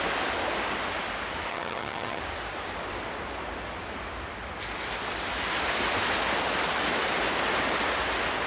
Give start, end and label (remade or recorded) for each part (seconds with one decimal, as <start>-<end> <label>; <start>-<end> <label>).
0.0-1.5 recorded; 1.5-2.2 remade; 2.2-8.5 recorded